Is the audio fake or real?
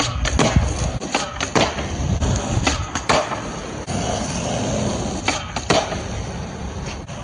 real